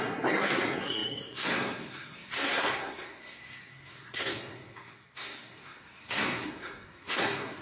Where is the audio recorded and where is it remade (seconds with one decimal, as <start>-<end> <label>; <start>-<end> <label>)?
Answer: 0.0-7.6 remade